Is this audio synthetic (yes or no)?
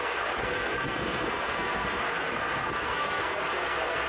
yes